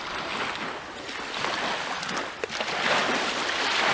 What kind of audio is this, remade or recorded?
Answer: recorded